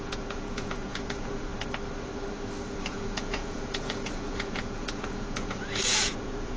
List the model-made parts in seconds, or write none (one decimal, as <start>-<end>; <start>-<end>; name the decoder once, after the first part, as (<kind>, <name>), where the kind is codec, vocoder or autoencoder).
0.0-1.5 (vocoder, Vocos); 2.9-6.6